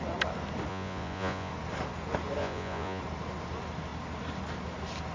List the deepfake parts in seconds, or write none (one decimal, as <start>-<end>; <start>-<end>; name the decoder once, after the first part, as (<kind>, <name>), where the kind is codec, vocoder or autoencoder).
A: 0.7-1.5 (vocoder, Vocos); 2.4-3.0